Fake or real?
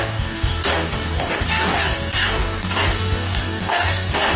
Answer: fake